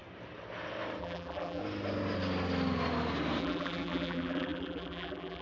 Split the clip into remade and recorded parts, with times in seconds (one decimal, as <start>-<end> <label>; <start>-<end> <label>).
0.0-1.0 recorded; 1.0-1.6 remade; 1.6-3.4 recorded; 3.4-5.4 remade